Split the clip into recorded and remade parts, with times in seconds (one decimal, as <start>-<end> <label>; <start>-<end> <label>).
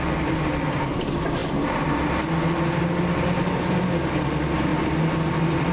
0.0-5.7 recorded